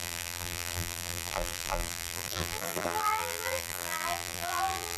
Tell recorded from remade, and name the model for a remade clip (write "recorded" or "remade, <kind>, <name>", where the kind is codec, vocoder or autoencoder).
remade, vocoder, BigVGAN v2